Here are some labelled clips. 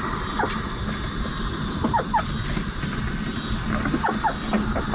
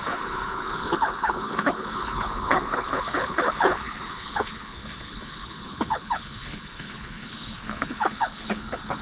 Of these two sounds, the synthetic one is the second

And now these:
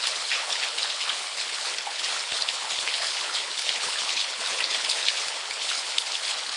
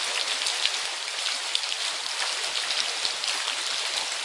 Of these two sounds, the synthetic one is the first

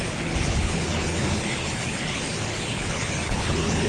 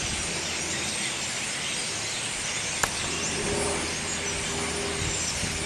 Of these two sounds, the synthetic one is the first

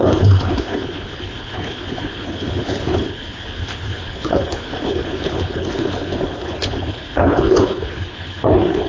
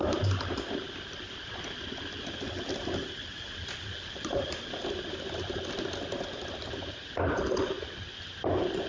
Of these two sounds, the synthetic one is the first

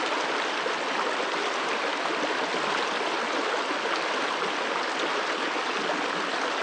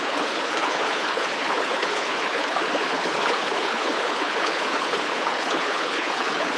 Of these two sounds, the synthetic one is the second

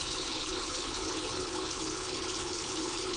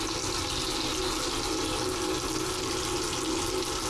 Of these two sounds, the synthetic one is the first